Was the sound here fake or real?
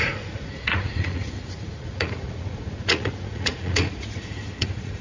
fake